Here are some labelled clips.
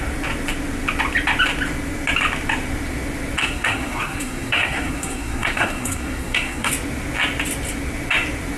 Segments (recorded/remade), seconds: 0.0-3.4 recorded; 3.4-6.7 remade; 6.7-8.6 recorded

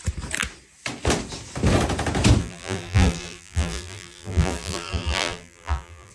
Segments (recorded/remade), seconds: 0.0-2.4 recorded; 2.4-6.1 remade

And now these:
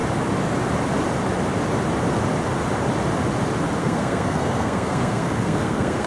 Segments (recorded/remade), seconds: 0.0-3.8 recorded; 3.8-6.1 remade